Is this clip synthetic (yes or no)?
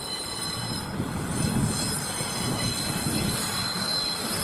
no